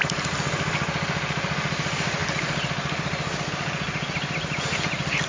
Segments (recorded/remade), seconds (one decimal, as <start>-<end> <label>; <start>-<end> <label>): 0.0-5.3 recorded